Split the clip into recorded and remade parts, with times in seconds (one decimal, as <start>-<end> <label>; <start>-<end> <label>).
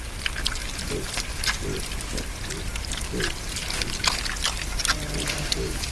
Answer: 0.0-5.9 recorded